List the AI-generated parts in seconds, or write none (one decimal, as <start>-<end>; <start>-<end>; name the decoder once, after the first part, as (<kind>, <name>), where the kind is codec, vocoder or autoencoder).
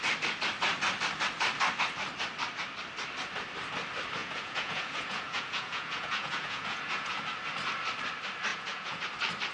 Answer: 4.2-7.2 (vocoder, Vocos); 8.5-9.0